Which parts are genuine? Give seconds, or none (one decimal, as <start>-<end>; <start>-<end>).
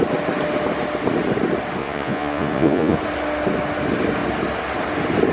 0.0-1.8; 3.0-5.3